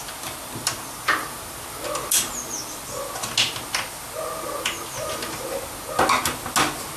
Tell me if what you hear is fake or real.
real